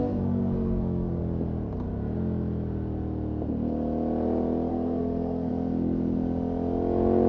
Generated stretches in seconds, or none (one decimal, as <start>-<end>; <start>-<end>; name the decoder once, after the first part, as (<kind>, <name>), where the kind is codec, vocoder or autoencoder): 0.0-1.2 (codec, SNAC); 4.7-5.5